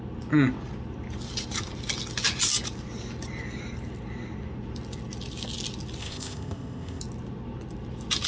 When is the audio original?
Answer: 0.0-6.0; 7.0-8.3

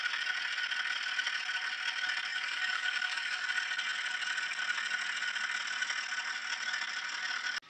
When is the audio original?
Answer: 0.0-2.3; 3.5-7.7

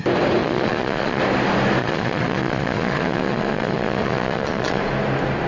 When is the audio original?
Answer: 0.0-0.4; 1.2-1.8; 4.8-5.5

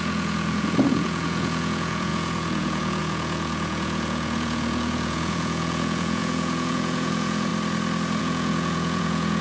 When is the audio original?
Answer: 7.5-8.2

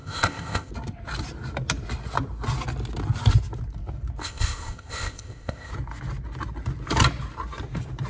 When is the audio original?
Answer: 0.7-4.2; 5.7-8.1

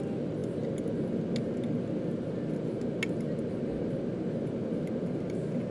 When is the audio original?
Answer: 0.0-5.7